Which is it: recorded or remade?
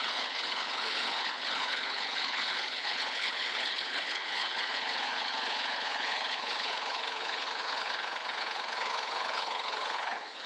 remade